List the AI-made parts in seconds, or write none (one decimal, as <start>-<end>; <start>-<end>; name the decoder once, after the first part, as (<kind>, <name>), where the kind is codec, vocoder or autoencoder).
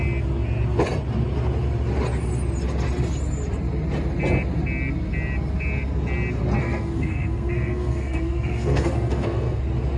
6.6-9.6 (codec, SNAC)